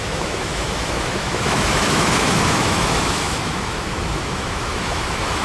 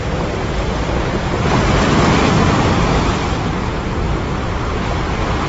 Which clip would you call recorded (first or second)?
second